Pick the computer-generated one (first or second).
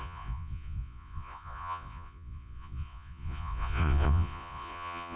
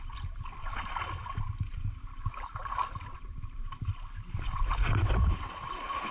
first